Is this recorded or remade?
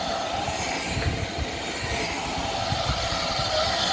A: recorded